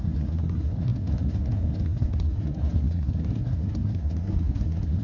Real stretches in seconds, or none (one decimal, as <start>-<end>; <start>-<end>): none